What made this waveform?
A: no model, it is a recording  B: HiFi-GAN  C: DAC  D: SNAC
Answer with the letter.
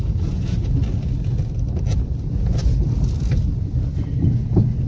A